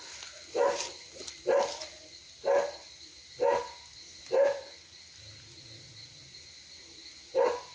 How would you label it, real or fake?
real